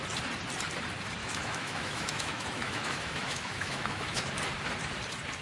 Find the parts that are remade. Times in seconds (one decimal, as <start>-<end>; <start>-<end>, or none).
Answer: 1.2-4.2